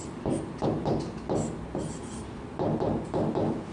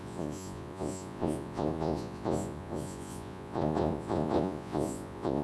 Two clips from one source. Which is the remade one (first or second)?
second